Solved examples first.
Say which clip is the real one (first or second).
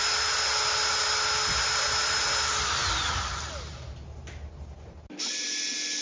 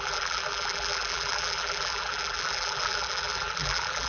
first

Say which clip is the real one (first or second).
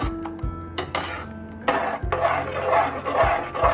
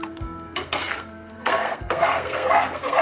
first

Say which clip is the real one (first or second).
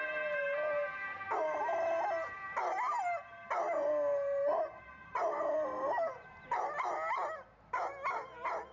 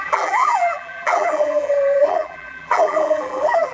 first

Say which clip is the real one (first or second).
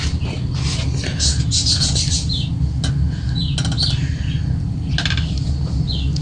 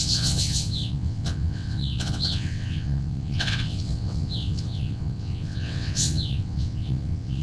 first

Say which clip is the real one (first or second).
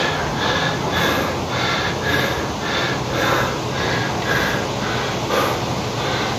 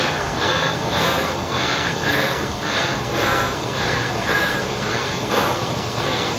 first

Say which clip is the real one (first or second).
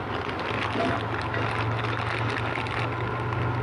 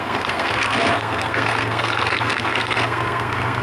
first